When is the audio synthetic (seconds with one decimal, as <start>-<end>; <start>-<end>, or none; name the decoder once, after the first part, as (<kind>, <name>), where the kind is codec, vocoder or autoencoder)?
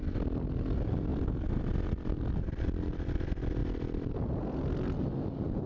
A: 1.1-2.9 (vocoder, BigVGAN v2); 3.6-5.7